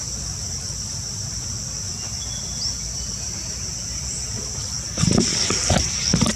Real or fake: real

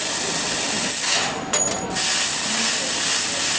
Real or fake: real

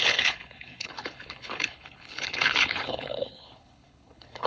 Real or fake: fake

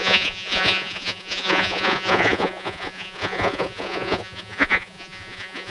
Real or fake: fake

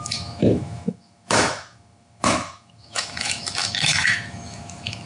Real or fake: fake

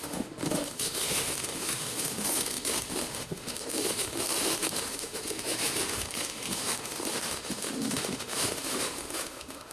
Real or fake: fake